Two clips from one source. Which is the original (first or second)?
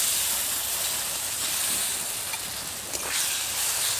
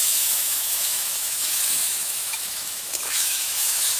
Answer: first